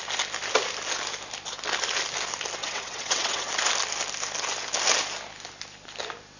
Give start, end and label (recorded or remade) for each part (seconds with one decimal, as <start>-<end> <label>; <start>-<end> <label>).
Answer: 0.0-2.6 recorded; 2.6-3.5 remade; 3.5-6.4 recorded